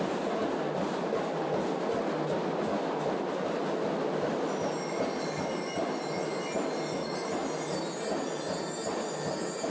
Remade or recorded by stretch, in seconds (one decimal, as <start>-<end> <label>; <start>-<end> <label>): 0.0-9.7 recorded